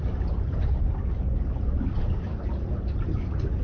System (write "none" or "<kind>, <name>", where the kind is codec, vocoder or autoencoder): none